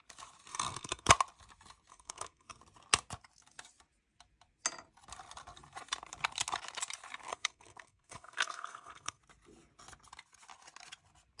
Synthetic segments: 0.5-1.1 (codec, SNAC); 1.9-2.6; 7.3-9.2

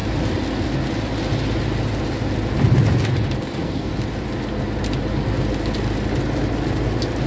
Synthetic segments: 3.4-3.9 (codec, SNAC)

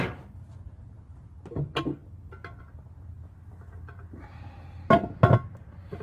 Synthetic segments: none

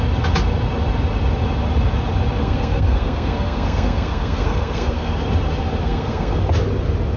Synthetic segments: 2.4-5.1 (codec, SNAC); 5.8-6.4

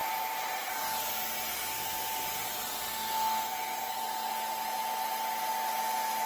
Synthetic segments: 2.9-4.0 (codec, SNAC)

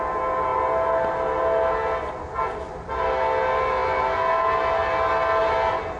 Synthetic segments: none

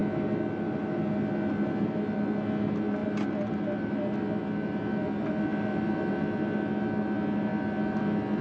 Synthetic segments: none

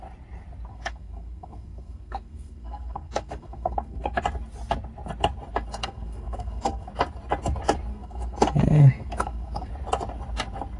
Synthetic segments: 0.7-4.2 (codec, SNAC); 5.8-6.9; 7.9-9.7